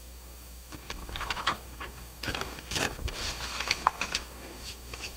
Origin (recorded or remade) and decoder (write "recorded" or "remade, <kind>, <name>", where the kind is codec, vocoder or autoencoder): remade, codec, DAC